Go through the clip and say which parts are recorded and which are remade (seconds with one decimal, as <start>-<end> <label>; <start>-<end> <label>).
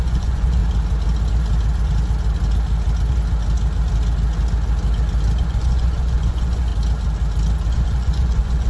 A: 0.0-0.6 remade; 0.6-5.4 recorded; 5.4-6.7 remade; 6.7-7.7 recorded; 7.7-8.7 remade